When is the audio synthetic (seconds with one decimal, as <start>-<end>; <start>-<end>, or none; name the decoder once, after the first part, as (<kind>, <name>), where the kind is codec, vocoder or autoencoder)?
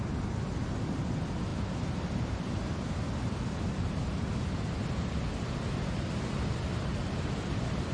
none